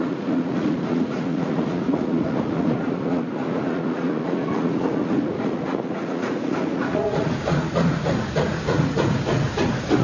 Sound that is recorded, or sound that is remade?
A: remade